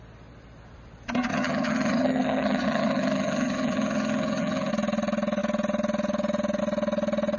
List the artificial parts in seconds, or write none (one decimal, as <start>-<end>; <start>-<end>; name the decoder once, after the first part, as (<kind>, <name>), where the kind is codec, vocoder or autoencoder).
1.3-4.7 (vocoder, HiFi-GAN)